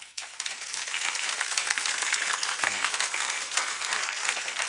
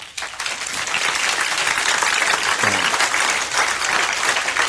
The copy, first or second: first